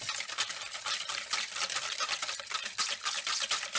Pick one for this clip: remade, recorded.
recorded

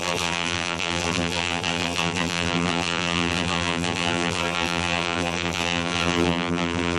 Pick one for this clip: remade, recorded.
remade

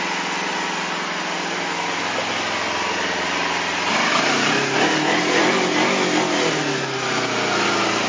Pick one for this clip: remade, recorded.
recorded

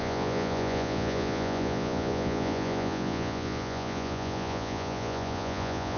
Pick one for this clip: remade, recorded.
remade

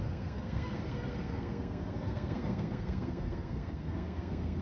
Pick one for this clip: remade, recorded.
remade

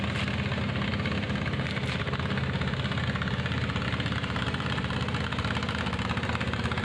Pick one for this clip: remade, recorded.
recorded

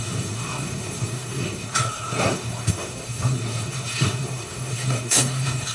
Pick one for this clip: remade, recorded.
remade